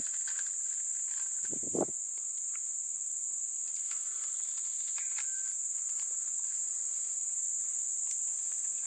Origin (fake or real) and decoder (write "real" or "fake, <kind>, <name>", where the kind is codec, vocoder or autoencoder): real